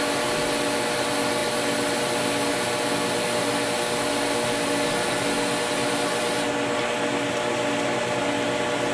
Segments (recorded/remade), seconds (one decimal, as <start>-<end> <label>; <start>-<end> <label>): 0.0-8.9 recorded